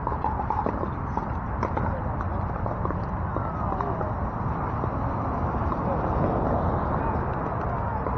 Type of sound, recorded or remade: recorded